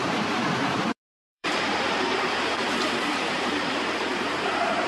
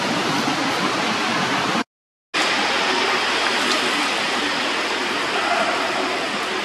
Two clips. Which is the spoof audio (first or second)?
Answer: first